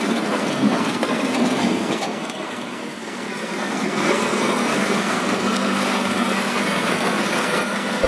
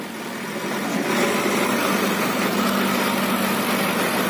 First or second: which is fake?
first